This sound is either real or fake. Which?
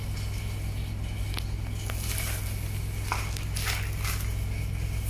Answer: real